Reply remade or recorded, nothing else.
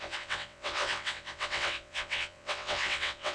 remade